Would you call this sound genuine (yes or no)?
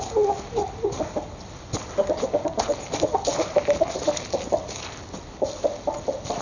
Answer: yes